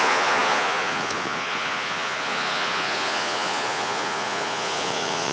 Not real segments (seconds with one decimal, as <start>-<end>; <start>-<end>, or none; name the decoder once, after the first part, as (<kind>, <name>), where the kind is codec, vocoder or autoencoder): 0.0-5.3 (vocoder, Vocos)